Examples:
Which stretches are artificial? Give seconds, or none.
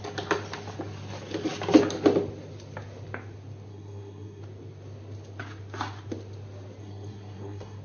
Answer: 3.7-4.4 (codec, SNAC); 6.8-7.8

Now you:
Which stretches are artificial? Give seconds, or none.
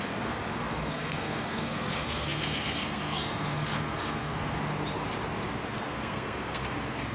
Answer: 0.0-4.6 (codec, SNAC); 5.7-7.1